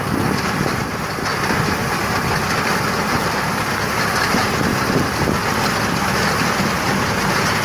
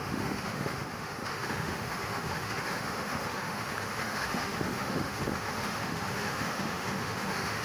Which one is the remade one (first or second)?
second